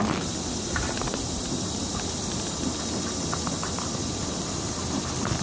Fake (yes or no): no